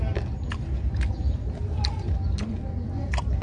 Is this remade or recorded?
recorded